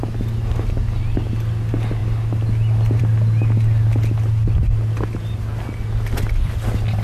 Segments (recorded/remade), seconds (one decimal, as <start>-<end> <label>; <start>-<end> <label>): 0.0-7.0 recorded